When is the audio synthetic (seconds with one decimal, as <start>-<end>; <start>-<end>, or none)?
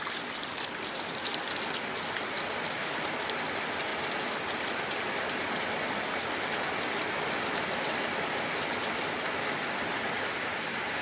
none